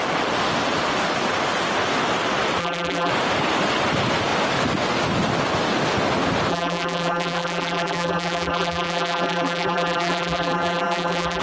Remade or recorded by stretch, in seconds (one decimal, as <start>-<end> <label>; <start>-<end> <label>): 0.0-2.6 recorded; 2.6-3.1 remade; 3.1-6.5 recorded; 6.5-11.4 remade